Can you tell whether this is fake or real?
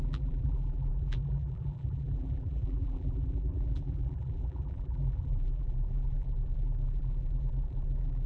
fake